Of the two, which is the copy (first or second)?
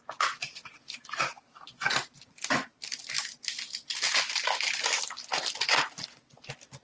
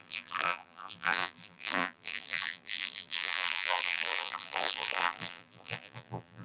second